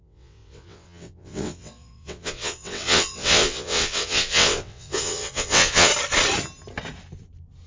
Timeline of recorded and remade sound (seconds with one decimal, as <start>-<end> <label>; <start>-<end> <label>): 0.0-5.9 remade; 5.9-7.7 recorded